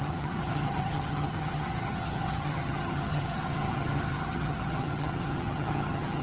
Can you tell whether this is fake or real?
fake